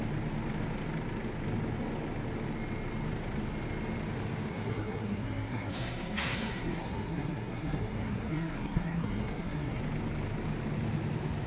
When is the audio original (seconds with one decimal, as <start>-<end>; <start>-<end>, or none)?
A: 0.0-4.5; 9.8-11.5